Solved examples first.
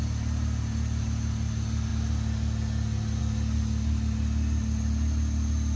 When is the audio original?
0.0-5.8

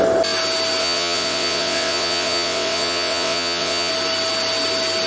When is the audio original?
0.0-0.8; 3.9-5.1

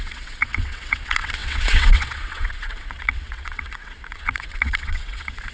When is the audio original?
none